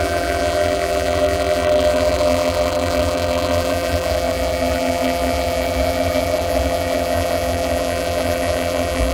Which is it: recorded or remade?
remade